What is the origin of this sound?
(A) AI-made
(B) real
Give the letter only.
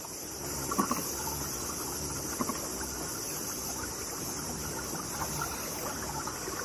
B